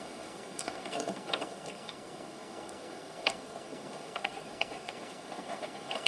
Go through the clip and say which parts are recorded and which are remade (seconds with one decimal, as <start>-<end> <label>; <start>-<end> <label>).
0.0-6.1 remade